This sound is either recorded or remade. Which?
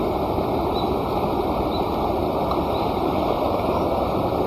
recorded